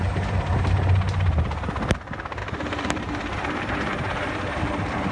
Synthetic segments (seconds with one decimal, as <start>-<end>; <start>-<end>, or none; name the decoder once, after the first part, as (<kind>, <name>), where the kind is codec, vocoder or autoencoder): 2.4-4.6 (vocoder, BigVGAN v2)